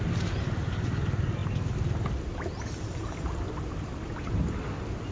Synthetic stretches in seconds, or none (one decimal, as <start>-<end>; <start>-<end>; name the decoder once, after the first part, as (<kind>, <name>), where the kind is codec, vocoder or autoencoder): none

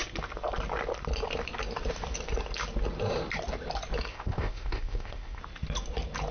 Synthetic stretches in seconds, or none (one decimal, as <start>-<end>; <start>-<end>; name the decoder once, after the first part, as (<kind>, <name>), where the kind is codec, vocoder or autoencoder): 4.1-5.4 (codec, ZipCodec)

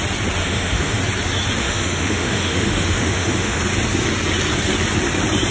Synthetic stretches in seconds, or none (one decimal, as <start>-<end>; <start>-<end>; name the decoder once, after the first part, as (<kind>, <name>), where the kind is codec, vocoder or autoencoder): 0.4-1.0 (autoencoder, DAC-VAE); 1.6-3.6